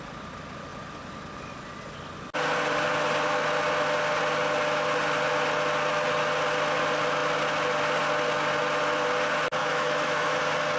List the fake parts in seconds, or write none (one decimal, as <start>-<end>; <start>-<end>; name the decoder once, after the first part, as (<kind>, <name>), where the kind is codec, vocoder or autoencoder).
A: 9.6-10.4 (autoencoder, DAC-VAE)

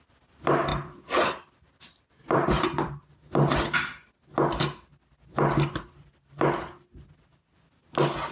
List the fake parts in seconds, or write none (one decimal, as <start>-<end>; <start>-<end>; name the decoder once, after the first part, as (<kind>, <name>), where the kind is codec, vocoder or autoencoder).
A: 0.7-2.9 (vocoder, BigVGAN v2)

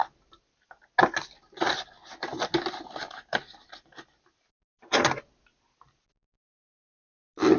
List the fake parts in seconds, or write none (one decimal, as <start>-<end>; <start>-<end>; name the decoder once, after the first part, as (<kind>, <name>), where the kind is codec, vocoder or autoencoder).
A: none

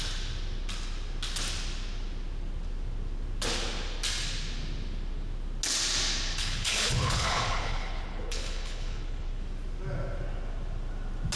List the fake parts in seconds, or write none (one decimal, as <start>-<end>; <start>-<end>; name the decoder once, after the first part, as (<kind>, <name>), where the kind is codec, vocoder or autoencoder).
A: 6.3-9.4 (codec, HILCodec)